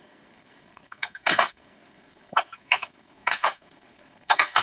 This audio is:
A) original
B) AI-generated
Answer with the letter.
B